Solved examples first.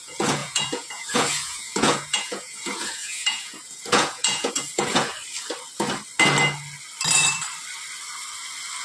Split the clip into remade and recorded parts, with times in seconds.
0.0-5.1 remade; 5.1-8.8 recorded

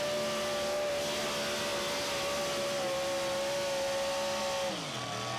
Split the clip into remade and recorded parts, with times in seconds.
0.0-5.4 recorded

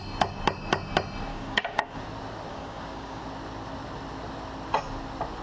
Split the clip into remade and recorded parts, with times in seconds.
0.0-1.3 recorded; 1.3-2.0 remade; 2.0-2.5 recorded; 2.5-3.2 remade; 3.2-5.4 recorded